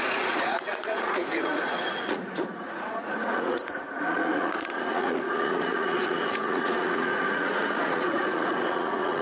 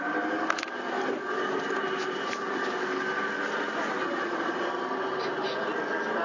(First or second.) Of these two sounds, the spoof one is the first